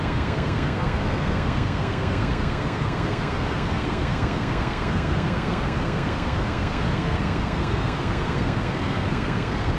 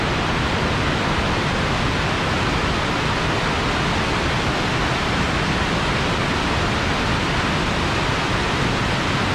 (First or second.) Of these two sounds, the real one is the second